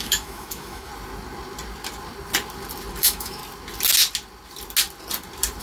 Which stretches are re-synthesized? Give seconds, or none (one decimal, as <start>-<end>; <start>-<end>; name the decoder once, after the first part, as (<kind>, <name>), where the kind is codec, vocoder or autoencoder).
0.0-0.9 (autoencoder, DAC-VAE); 3.0-3.4